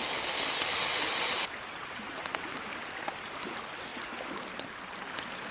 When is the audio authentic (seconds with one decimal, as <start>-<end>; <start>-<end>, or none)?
0.0-5.5